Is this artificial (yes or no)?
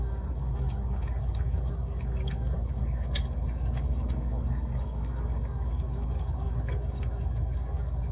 yes